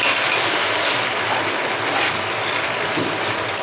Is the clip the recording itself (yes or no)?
yes